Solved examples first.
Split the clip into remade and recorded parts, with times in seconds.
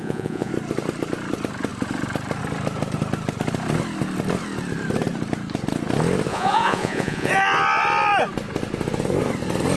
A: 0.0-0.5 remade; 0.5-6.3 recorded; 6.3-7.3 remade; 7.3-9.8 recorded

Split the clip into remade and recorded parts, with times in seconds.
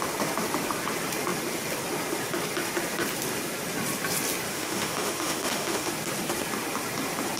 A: 0.0-4.5 recorded; 4.5-5.9 remade; 5.9-7.4 recorded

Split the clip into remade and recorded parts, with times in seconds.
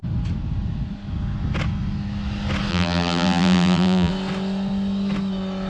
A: 0.0-2.7 recorded; 2.7-4.1 remade; 4.1-5.7 recorded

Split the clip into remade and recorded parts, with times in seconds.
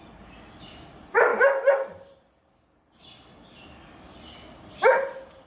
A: 0.0-5.5 recorded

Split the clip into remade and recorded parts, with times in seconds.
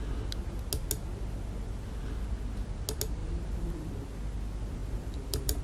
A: 0.0-3.2 recorded; 3.2-3.9 remade; 3.9-4.8 recorded; 4.8-5.6 remade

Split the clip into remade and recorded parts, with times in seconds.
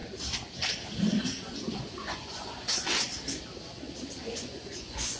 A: 0.0-1.2 recorded; 1.2-3.1 remade; 3.1-4.2 recorded; 4.2-5.2 remade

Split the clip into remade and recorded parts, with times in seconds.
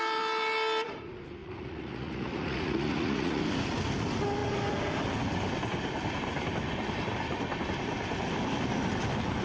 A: 0.0-1.4 recorded; 1.4-3.4 remade; 3.4-9.4 recorded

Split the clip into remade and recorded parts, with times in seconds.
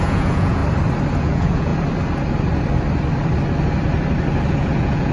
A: 0.0-0.6 remade; 0.6-1.2 recorded; 1.2-1.7 remade; 1.7-4.5 recorded; 4.5-5.1 remade